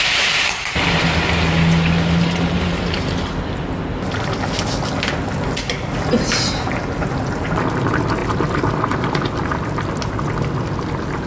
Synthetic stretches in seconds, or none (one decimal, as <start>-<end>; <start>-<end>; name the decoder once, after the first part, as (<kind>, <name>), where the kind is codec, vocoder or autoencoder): none